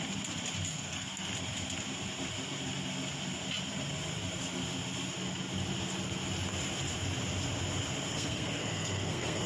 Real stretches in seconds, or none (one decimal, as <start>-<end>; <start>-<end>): 0.0-0.7; 1.3-8.1